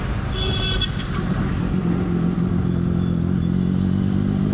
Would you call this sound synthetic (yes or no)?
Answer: no